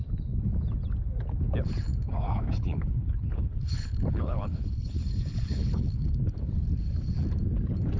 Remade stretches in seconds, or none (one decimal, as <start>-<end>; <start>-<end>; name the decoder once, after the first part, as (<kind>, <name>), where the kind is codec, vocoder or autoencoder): 1.9-6.5 (codec, HILCodec)